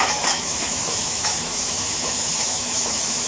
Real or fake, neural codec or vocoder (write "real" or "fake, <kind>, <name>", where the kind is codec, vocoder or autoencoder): fake, autoencoder, DAC-VAE